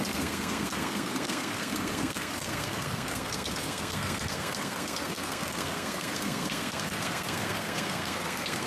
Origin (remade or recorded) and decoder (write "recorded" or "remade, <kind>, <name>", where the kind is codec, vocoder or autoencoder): remade, codec, SNAC